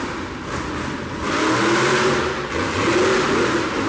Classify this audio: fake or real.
real